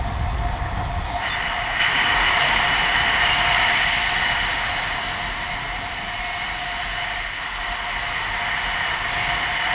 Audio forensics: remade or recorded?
recorded